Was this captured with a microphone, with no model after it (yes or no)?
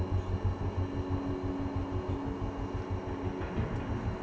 yes